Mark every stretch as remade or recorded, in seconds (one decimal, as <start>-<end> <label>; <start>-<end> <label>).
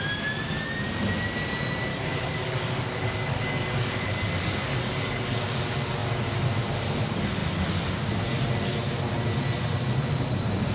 0.0-1.9 recorded; 1.9-5.2 remade; 5.2-10.7 recorded